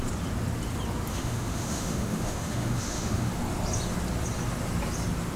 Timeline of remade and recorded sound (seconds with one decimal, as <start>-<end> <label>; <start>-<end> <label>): 0.0-1.1 recorded; 1.1-3.3 remade; 3.3-5.4 recorded